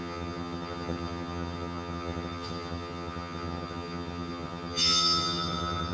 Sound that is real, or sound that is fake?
fake